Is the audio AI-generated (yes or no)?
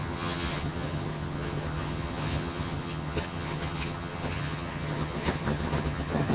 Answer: yes